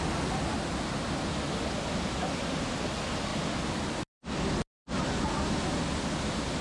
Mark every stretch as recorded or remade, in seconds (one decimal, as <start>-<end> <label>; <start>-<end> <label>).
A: 0.0-6.6 recorded